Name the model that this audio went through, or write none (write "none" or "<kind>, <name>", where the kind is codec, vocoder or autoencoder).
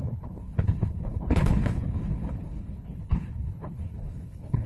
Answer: codec, HILCodec